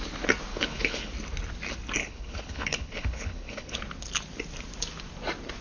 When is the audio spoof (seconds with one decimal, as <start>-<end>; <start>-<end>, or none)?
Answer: 0.5-1.1; 2.0-3.8

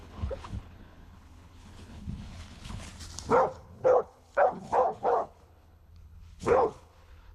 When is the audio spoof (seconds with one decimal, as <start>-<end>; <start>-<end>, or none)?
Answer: 0.0-2.9; 3.5-7.3